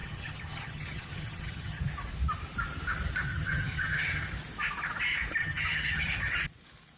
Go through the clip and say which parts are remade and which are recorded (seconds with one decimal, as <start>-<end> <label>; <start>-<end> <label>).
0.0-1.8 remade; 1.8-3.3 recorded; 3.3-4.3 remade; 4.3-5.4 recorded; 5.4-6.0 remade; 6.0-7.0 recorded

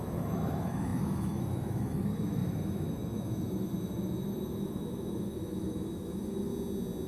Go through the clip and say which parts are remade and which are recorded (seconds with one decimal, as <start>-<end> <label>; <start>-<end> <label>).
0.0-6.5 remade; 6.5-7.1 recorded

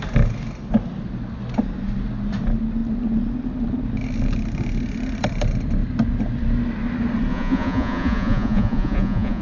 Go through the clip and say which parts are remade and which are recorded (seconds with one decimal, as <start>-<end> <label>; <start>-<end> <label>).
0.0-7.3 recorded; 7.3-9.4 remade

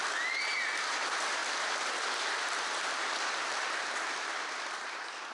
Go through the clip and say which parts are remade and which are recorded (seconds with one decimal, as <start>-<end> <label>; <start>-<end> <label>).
0.0-1.4 recorded; 1.4-4.6 remade; 4.6-5.3 recorded

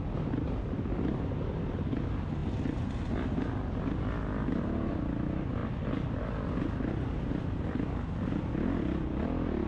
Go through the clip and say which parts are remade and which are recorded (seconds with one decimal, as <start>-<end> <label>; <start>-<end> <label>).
0.0-9.7 recorded

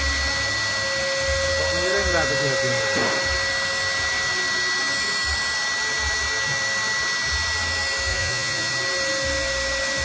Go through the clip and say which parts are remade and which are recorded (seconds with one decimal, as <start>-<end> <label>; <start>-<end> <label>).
0.0-8.1 recorded; 8.1-8.7 remade; 8.7-10.0 recorded

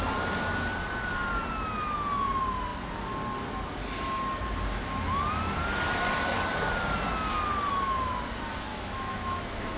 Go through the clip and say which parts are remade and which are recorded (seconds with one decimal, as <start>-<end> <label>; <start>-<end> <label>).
0.0-8.7 recorded; 8.7-9.8 remade